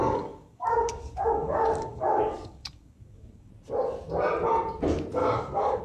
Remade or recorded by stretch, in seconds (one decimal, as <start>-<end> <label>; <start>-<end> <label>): 0.0-3.5 remade; 3.5-5.2 recorded; 5.2-5.8 remade